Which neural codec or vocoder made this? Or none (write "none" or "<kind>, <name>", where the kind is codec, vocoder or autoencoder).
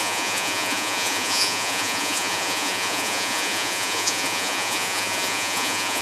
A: vocoder, Vocos